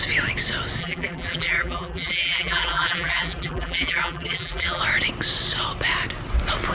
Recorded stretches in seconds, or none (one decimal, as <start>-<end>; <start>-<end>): 0.0-0.8; 4.8-6.7